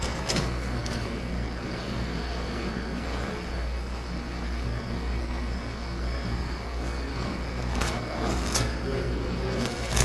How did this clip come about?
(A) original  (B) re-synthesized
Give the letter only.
B